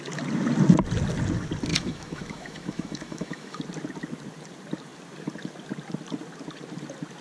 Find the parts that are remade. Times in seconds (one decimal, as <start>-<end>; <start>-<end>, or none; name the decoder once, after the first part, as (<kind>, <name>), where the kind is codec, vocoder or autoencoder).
1.7-3.6 (autoencoder, DAC-VAE)